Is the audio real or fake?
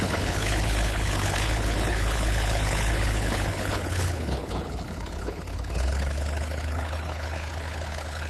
fake